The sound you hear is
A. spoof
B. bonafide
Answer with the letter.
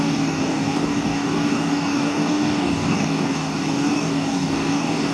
A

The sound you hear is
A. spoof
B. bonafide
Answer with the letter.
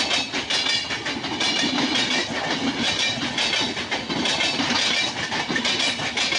B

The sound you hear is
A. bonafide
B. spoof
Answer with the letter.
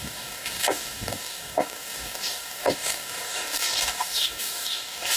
B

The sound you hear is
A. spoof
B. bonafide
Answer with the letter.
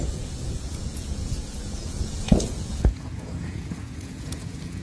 A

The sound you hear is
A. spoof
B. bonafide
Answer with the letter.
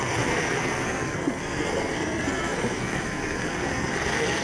A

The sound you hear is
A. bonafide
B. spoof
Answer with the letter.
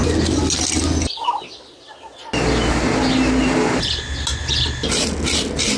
A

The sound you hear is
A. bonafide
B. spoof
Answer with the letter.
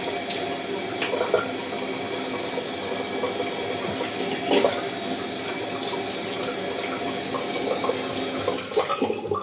A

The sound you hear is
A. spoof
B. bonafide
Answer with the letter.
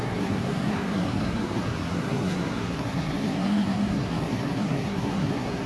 A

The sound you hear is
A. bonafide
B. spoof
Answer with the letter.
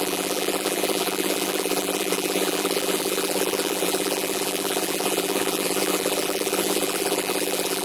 B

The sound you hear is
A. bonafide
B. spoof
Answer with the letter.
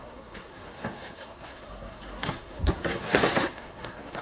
B